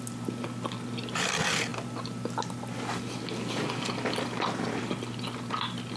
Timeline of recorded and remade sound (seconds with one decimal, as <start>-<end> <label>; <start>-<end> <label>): 0.0-6.0 recorded